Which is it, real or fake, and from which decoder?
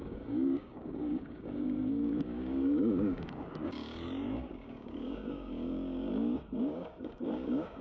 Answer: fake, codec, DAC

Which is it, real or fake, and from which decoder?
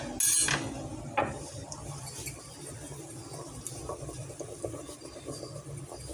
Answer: real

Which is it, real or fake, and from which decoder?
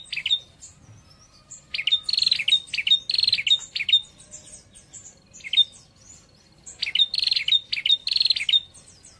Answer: real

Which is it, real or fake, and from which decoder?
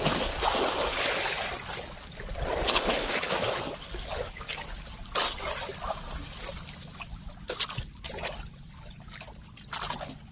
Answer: real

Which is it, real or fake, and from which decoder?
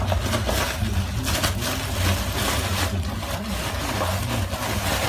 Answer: real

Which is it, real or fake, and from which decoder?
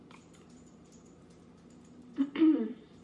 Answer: fake, vocoder, BigVGAN v2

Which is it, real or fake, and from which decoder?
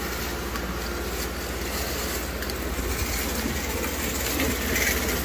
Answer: real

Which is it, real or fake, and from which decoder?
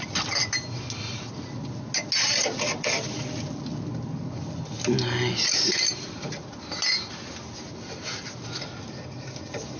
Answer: real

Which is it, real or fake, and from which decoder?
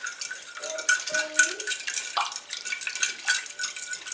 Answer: real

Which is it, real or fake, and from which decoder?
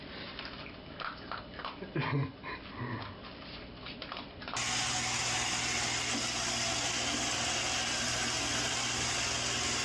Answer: real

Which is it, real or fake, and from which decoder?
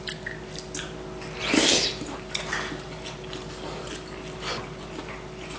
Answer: real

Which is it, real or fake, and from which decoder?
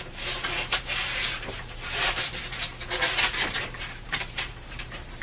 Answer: fake, vocoder, BigVGAN v2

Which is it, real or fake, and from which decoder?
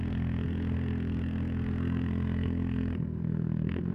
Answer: fake, codec, SNAC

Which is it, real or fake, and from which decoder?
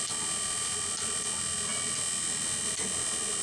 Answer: real